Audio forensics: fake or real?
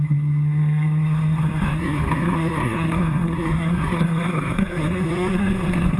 fake